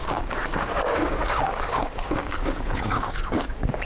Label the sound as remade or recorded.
remade